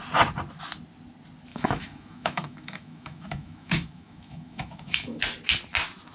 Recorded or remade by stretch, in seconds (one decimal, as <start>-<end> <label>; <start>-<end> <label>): 0.0-1.5 recorded; 1.5-5.2 remade; 5.2-6.1 recorded